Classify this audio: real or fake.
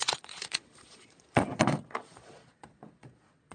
fake